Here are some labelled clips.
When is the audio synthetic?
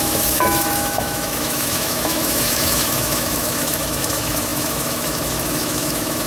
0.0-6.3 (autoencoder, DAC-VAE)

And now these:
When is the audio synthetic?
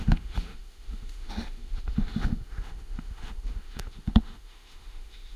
0.0-5.4 (autoencoder, DAC-VAE)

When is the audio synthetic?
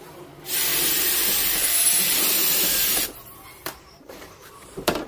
0.0-5.1 (vocoder, BigVGAN v2)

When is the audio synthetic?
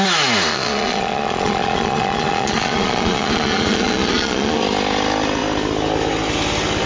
0.5-4.6 (vocoder, Vocos)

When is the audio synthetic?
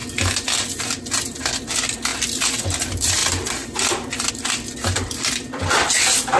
0.8-2.1 (vocoder, BigVGAN v2); 2.6-6.4